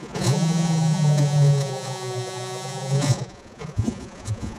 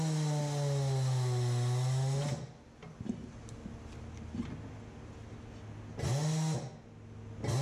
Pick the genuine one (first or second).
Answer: second